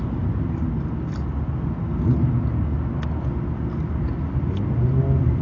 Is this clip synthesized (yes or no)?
no